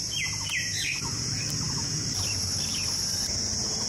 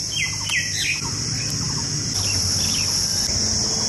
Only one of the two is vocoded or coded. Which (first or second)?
first